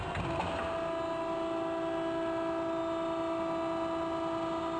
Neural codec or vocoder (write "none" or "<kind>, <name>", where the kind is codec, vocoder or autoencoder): none